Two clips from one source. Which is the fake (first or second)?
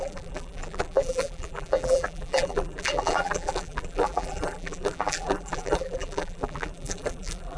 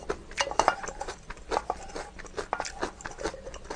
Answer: first